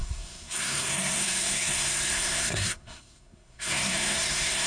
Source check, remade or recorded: remade